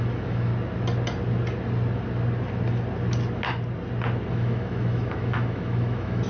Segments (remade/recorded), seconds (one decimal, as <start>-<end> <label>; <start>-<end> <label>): 0.0-0.5 remade; 0.5-4.3 recorded; 4.3-6.3 remade